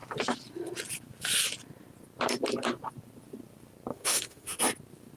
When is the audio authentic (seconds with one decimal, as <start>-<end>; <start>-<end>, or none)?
0.0-3.9; 4.6-5.2